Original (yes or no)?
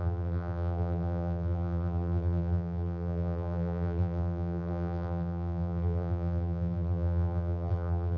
no